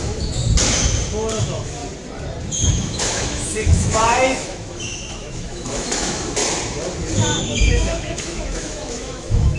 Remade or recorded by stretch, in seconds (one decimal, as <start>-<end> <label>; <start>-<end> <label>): 0.0-0.4 remade; 0.4-1.4 recorded; 1.4-1.8 remade; 1.8-2.7 recorded; 2.7-6.4 remade; 6.4-7.4 recorded; 7.4-9.6 remade